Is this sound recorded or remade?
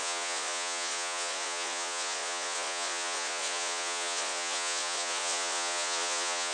remade